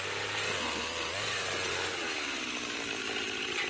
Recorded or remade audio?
recorded